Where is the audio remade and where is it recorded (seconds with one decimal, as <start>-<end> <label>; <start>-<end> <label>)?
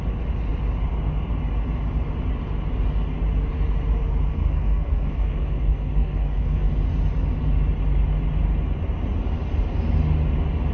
0.0-4.3 recorded; 4.3-6.7 remade; 6.7-10.7 recorded